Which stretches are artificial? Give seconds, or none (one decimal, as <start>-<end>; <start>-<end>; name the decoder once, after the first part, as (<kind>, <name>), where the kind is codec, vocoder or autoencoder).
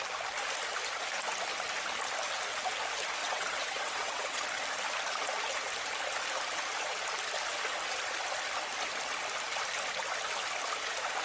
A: 3.2-4.4 (vocoder, WaveNeXt)